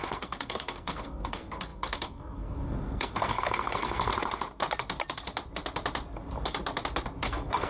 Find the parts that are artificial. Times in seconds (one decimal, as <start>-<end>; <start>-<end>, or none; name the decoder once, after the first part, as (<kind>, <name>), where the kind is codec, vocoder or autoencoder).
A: 0.0-4.1 (codec, SNAC); 7.2-7.7